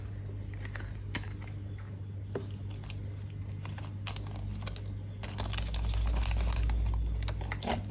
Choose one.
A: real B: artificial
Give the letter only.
A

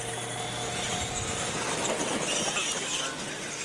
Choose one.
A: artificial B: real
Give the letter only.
B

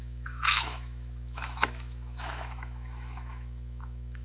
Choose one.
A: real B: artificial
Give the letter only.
B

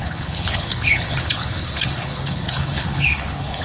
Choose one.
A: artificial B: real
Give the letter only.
A